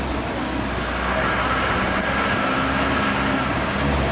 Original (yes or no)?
yes